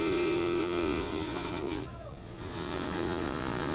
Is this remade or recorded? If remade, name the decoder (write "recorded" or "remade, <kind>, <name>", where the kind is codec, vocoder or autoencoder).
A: remade, vocoder, Vocos